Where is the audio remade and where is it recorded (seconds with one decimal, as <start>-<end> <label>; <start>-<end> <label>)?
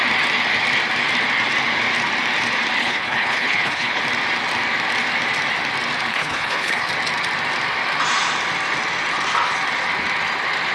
0.0-2.8 recorded; 2.8-4.0 remade; 4.0-6.1 recorded; 6.1-6.9 remade; 6.9-10.7 recorded